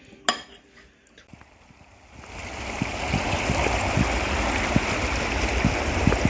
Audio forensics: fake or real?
real